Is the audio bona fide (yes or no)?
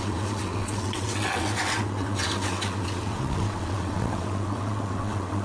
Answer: no